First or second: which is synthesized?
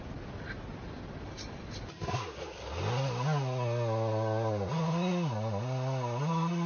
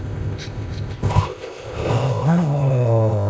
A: second